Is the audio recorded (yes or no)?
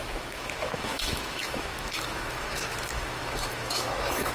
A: no